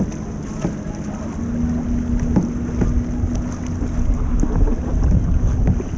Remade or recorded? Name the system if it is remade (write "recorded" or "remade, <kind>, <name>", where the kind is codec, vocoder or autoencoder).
recorded